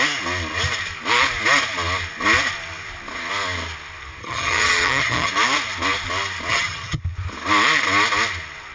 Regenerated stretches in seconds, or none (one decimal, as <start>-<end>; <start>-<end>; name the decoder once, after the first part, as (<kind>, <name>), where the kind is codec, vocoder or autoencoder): 4.2-5.3 (vocoder, HiFi-GAN); 6.5-7.0